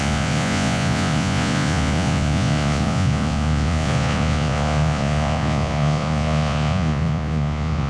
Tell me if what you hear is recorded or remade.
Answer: remade